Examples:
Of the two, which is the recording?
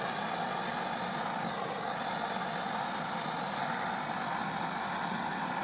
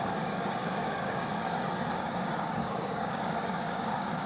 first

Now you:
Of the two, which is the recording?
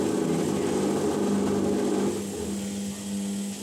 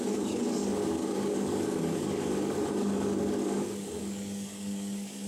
first